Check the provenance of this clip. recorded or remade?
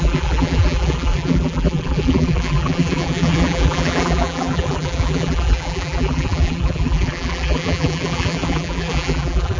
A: remade